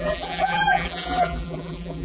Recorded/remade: remade